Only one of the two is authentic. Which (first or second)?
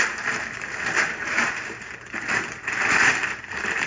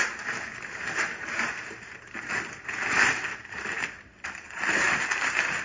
first